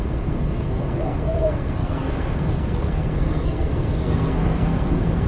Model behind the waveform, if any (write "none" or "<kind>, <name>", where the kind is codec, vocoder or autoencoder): codec, SNAC